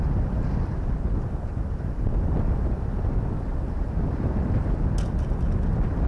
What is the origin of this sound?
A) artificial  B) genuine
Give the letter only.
B